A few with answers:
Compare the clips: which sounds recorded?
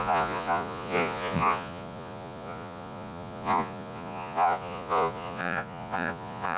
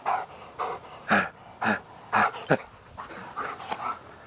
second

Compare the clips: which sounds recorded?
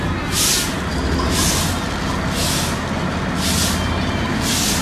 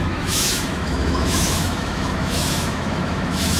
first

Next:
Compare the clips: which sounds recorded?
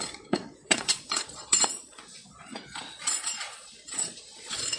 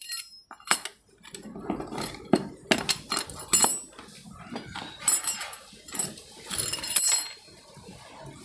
second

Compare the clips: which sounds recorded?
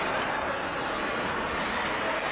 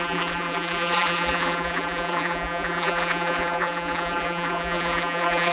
first